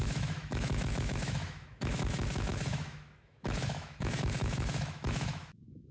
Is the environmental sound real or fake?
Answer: fake